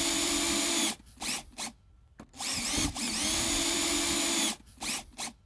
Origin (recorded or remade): remade